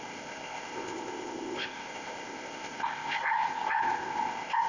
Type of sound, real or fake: fake